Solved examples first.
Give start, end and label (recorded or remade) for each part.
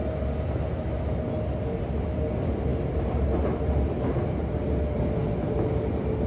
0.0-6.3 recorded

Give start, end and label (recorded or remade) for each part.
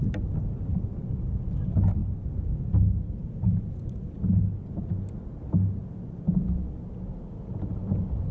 0.0-8.3 recorded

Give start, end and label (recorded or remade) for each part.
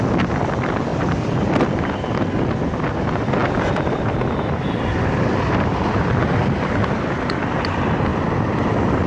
0.0-0.9 recorded; 0.9-2.3 remade; 2.3-3.4 recorded; 3.4-6.7 remade; 6.7-8.1 recorded; 8.1-9.1 remade